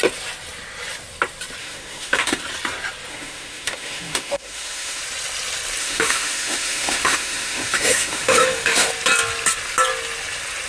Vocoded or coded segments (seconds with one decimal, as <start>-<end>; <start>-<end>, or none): 1.6-2.4; 3.1-5.0; 5.8-8.9